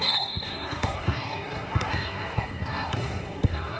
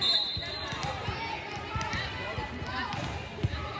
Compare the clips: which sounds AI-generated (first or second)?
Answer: first